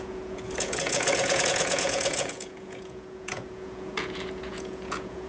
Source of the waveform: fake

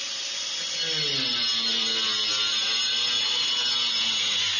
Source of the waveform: real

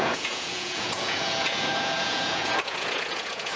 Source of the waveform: fake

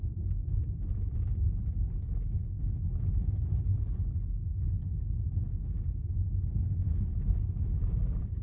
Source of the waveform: real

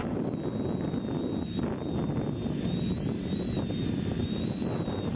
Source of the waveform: real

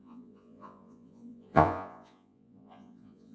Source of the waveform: fake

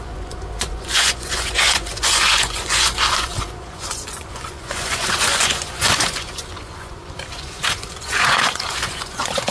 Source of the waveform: fake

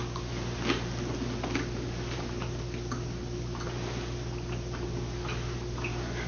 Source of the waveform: real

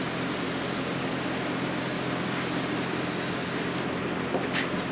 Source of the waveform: real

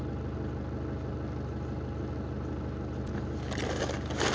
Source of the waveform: real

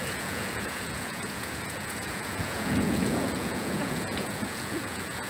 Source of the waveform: fake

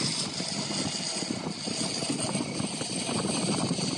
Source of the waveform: real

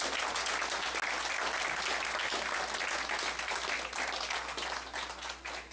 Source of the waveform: real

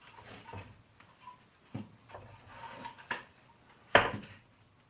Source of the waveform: real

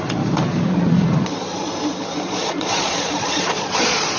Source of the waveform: fake